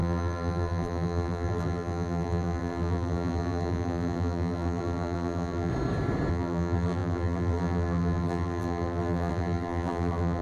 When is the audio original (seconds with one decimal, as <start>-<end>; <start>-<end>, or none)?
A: 5.7-6.3